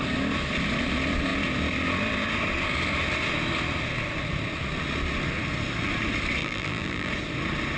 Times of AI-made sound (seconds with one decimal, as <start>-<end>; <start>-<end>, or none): 6.4-7.1